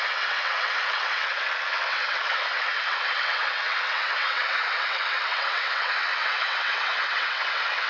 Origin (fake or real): fake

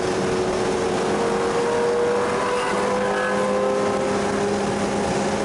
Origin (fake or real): real